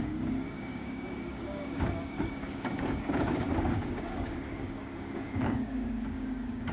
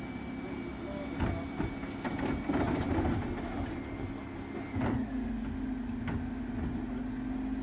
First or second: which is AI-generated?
first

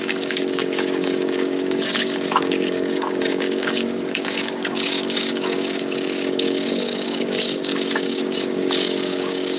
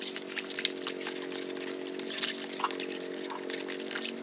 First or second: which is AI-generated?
first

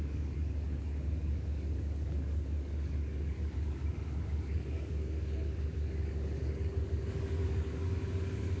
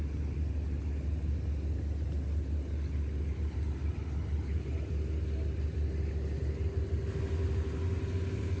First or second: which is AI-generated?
first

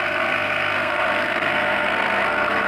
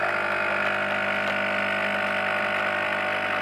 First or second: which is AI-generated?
first